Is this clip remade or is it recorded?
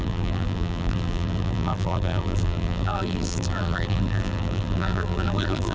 remade